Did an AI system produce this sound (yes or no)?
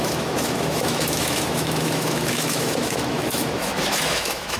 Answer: yes